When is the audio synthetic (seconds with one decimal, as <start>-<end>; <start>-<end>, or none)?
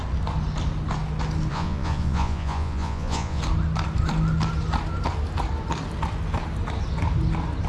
1.5-3.4